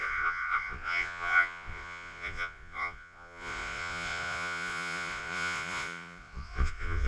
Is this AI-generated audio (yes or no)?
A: yes